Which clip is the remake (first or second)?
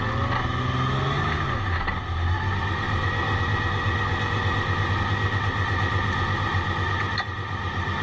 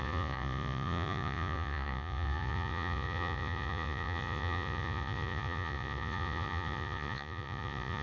second